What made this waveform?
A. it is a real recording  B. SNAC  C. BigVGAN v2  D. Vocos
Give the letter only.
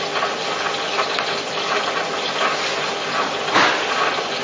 A